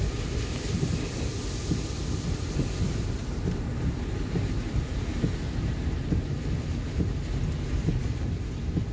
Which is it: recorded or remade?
recorded